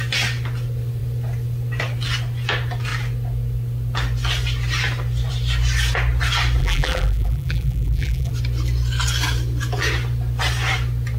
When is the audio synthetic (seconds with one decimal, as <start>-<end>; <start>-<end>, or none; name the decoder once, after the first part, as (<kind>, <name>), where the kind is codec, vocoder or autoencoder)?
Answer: 6.6-8.3 (vocoder, BigVGAN v2)